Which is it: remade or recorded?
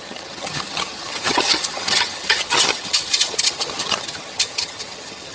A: remade